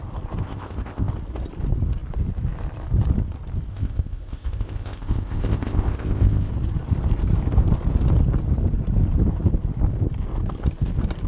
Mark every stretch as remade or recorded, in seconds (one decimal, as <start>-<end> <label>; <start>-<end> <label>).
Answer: 0.0-0.4 recorded; 0.4-1.1 remade; 1.1-3.7 recorded; 3.7-6.5 remade; 6.5-11.3 recorded